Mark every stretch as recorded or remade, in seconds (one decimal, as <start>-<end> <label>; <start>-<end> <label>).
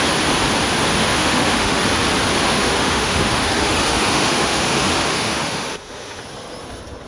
0.0-1.0 recorded; 1.0-1.8 remade; 1.8-2.4 recorded; 2.4-6.2 remade; 6.2-7.1 recorded